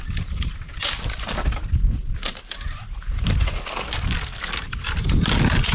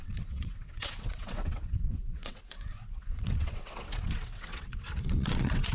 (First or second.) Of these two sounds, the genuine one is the first